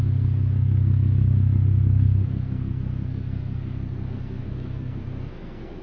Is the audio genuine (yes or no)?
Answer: no